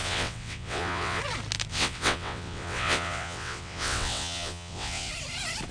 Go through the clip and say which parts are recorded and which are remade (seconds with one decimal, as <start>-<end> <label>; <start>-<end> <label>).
0.0-1.2 remade; 1.2-1.7 recorded; 1.7-5.1 remade; 5.1-5.7 recorded